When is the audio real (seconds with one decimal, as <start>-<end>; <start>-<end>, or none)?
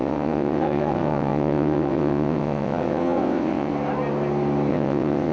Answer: 3.7-4.7